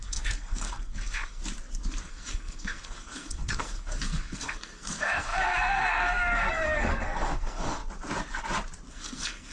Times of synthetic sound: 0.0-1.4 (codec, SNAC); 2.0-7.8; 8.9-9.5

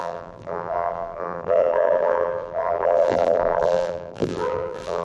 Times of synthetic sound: 0.0-5.0 (vocoder, BigVGAN v2)

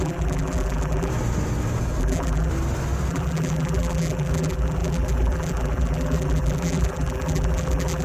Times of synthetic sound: 0.0-1.1 (vocoder, BigVGAN v2); 2.0-2.5; 3.1-8.0

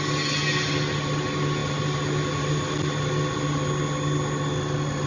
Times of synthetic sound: none